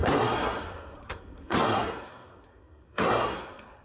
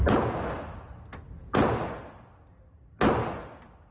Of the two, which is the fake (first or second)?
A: first